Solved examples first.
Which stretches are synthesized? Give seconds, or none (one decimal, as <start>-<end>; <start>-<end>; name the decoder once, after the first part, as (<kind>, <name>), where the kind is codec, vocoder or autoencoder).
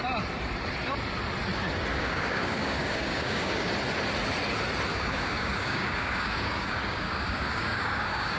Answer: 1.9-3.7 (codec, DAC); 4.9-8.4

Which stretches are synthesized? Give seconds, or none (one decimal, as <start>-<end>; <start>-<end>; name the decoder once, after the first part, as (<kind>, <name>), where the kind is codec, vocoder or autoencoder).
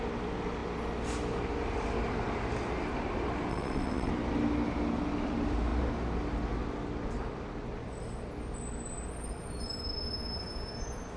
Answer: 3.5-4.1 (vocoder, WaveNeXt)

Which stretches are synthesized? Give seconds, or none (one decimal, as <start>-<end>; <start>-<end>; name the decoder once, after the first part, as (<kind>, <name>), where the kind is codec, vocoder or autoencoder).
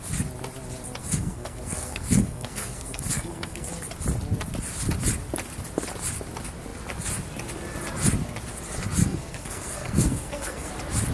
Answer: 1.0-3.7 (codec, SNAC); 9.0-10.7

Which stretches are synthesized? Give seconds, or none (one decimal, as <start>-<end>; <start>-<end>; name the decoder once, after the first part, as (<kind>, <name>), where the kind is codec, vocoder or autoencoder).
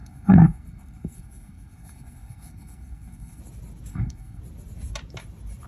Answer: 0.0-3.4 (codec, SNAC); 3.9-4.4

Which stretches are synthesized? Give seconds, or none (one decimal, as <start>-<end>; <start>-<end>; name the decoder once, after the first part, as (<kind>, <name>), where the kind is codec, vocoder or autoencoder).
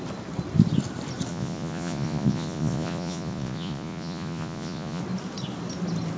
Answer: 1.3-5.0 (vocoder, Vocos)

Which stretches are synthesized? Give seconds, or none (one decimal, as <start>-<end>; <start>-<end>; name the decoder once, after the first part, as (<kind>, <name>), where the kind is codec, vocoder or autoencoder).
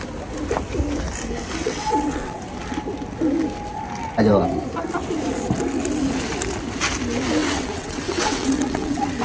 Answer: 1.6-2.4 (vocoder, WaveNeXt); 7.4-9.2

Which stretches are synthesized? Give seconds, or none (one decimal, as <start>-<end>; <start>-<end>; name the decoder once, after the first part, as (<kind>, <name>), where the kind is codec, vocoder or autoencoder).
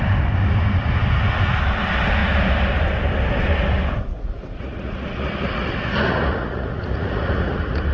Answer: 4.1-7.9 (vocoder, Vocos)